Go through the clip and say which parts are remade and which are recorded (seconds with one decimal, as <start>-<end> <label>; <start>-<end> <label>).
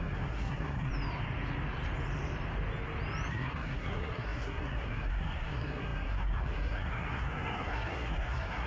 0.0-0.9 remade; 0.9-3.3 recorded; 3.3-8.7 remade